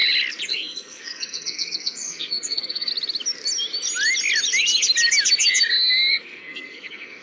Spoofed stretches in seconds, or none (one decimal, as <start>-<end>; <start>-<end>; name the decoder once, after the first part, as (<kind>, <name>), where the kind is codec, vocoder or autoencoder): 0.5-2.9 (codec, SNAC); 6.1-7.2